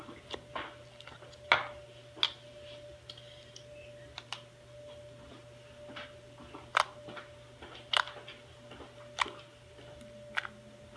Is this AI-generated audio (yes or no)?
no